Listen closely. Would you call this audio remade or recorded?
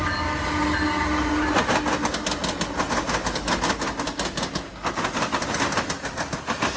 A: recorded